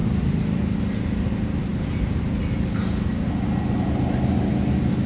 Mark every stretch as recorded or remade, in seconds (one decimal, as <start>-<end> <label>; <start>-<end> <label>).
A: 0.0-5.1 recorded